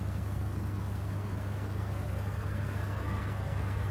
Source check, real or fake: fake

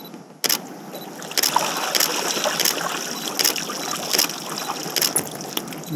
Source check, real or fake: real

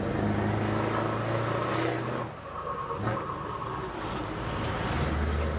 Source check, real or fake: real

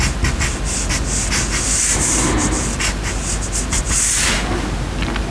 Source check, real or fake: real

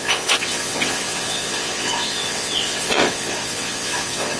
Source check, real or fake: fake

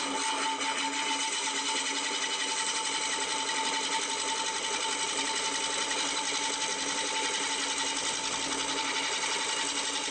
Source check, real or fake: real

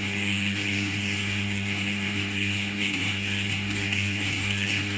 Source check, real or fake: fake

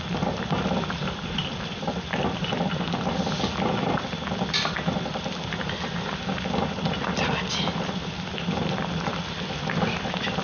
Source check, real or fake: fake